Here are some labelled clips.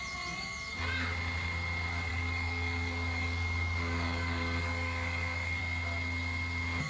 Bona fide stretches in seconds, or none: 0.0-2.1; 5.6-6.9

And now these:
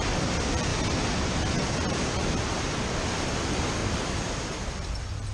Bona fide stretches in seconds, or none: 0.7-1.6; 2.2-3.4; 3.8-4.5

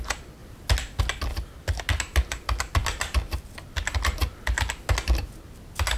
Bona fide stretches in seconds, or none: 0.0-6.0

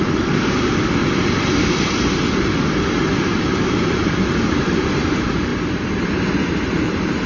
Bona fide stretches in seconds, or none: 1.0-3.0; 5.5-6.7

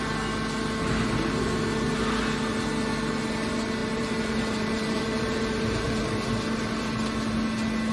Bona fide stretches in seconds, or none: 0.0-3.8; 6.3-7.9

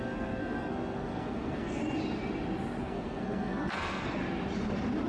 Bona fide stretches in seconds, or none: 1.8-2.8; 4.2-5.1